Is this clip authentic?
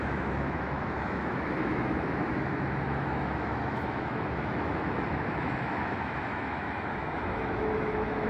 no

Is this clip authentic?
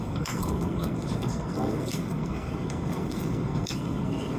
no